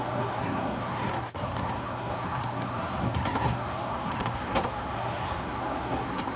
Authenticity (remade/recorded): remade